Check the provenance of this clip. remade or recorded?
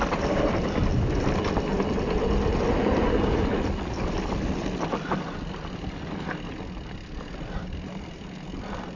recorded